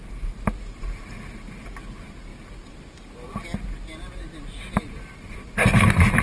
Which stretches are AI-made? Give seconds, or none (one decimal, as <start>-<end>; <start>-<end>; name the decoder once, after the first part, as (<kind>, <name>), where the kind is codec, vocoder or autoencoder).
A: 0.0-1.1 (vocoder, BigVGAN v2)